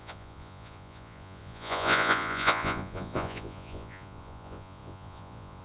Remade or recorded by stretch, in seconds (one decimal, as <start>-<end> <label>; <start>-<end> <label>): 0.0-5.6 remade